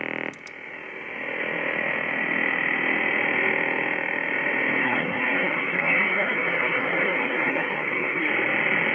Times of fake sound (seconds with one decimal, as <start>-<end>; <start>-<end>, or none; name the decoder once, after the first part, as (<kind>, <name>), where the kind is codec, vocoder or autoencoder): 4.8-8.3 (codec, SNAC)